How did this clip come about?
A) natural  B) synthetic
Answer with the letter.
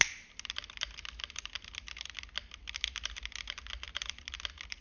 A